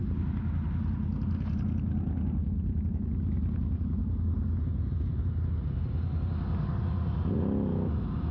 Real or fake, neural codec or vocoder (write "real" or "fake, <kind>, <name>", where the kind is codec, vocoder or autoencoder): real